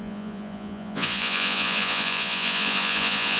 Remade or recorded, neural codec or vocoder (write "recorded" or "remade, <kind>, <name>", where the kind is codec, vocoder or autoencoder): remade, vocoder, Vocos